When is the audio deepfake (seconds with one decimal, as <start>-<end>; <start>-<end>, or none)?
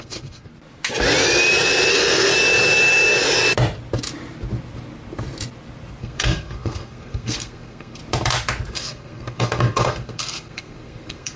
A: 0.0-0.5; 1.9-2.3; 6.0-8.0; 8.7-11.4